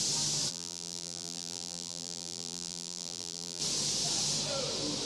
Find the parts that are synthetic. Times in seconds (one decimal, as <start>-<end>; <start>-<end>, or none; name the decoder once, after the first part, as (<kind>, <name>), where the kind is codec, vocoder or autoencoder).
0.5-3.6 (vocoder, BigVGAN v2)